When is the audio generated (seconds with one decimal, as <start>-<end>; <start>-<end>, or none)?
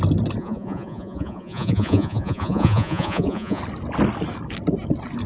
0.4-3.6